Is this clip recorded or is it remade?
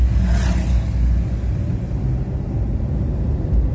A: recorded